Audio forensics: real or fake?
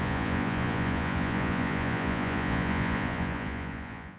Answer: fake